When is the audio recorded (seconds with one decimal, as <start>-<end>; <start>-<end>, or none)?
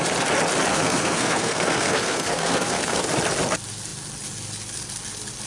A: 0.0-0.7; 3.0-5.5